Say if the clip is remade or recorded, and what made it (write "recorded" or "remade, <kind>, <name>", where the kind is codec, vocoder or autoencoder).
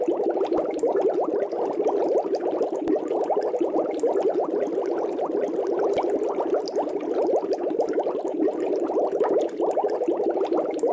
recorded